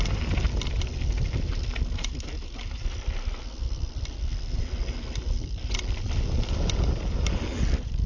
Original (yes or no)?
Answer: yes